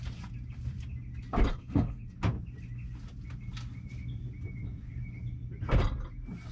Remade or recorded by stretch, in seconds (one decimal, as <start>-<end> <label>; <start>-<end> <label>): 0.0-1.5 recorded; 1.5-2.1 remade; 2.1-6.5 recorded